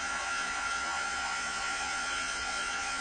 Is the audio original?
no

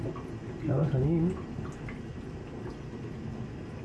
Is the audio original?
yes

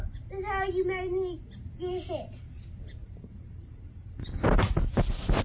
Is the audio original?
yes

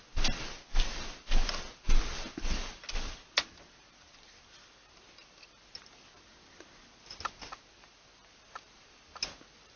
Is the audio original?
yes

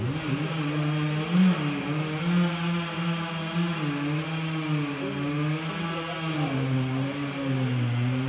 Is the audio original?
yes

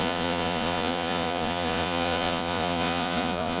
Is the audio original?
no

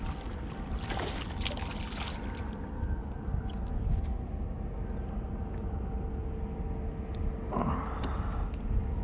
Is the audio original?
yes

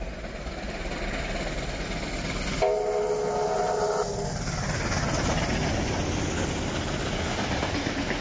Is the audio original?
yes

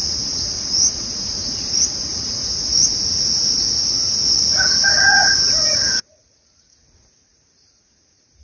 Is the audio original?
no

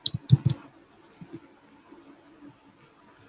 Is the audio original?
yes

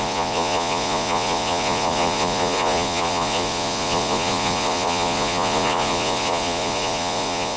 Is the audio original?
no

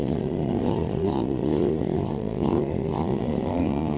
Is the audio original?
no